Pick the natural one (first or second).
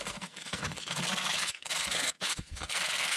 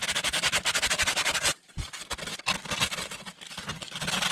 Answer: second